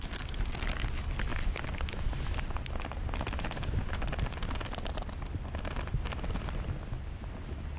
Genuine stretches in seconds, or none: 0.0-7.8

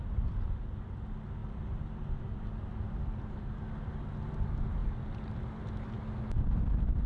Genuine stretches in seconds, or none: 0.0-7.1

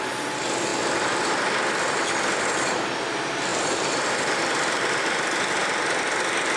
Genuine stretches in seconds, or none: 0.0-3.5; 4.4-6.6